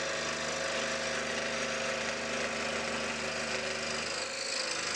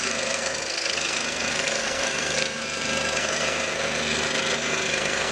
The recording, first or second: first